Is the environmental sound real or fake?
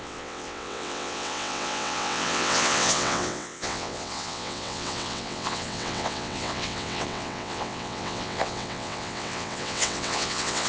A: fake